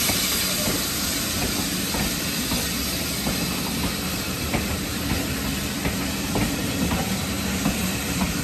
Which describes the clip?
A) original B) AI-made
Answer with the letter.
A